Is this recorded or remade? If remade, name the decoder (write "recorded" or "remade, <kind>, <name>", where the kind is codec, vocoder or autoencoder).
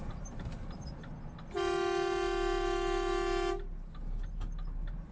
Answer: recorded